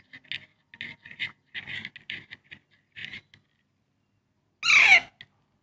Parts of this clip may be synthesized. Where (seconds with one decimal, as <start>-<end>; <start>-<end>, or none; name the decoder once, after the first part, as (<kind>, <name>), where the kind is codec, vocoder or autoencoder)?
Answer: none